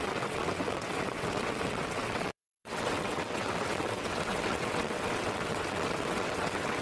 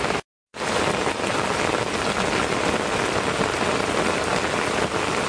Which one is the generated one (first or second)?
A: first